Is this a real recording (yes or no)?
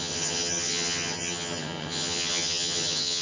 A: no